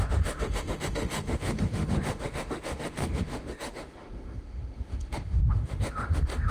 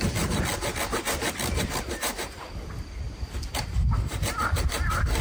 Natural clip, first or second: second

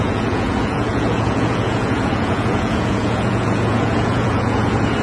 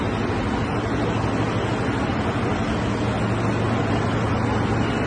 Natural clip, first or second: second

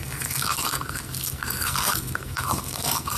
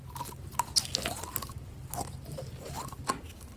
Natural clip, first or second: second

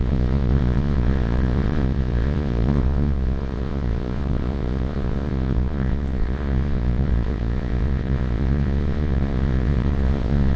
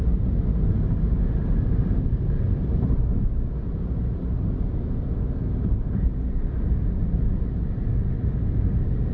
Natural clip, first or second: second